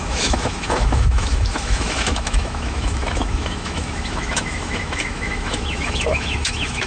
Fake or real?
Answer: fake